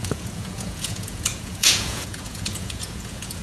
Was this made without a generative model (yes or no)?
no